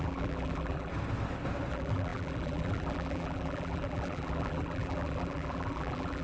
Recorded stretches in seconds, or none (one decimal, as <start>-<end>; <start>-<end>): 0.9-1.7